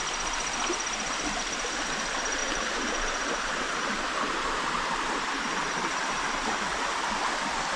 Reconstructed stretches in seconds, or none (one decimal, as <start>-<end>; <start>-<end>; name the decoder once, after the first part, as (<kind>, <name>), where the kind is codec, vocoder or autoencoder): 2.4-5.4 (vocoder, BigVGAN v2)